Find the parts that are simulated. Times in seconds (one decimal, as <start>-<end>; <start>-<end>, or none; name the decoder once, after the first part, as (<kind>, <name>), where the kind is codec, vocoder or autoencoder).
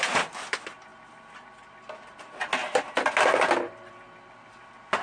none